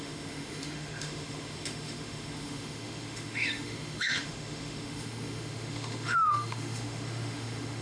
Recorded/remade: remade